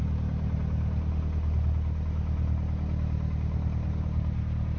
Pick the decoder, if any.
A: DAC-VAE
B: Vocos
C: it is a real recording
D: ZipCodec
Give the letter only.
C